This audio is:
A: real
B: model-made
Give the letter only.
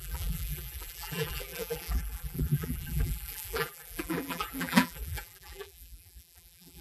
B